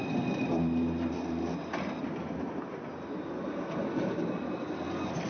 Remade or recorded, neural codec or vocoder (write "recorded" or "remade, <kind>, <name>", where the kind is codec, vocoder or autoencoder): recorded